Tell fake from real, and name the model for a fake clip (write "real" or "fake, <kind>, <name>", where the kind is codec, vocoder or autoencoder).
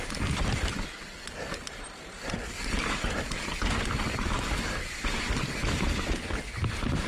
real